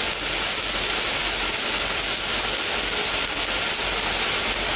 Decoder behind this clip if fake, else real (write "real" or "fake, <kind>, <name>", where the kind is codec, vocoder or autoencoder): real